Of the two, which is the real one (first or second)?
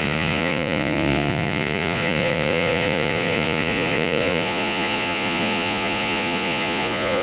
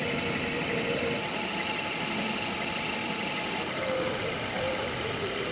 second